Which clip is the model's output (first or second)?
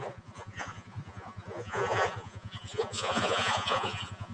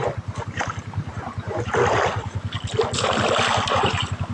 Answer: first